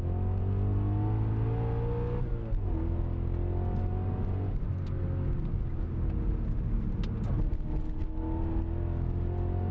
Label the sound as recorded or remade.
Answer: recorded